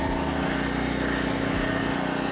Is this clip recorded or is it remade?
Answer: recorded